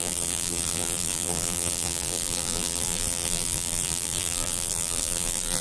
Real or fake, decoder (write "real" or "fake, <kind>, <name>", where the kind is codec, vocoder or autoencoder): fake, vocoder, BigVGAN v2